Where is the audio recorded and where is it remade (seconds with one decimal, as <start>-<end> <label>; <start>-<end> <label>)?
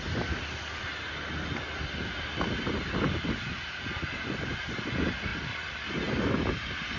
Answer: 0.0-5.3 recorded; 5.3-5.9 remade; 5.9-7.0 recorded